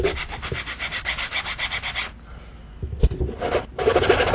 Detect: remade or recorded recorded